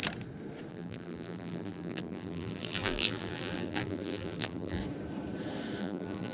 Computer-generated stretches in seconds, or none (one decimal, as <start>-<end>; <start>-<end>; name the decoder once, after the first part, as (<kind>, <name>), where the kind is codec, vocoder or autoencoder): 0.7-4.8 (vocoder, BigVGAN v2); 5.8-6.3

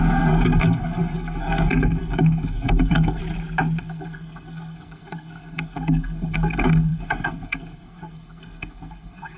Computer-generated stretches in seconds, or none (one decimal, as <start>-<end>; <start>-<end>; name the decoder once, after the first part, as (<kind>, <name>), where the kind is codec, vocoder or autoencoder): 0.0-3.2 (codec, SNAC); 3.8-9.4

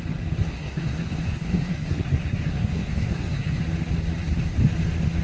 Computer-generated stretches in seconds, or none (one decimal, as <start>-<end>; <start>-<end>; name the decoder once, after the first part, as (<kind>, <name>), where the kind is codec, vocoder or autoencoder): 0.5-3.6 (codec, SNAC)